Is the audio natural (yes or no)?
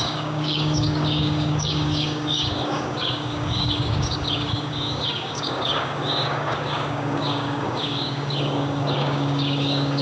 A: no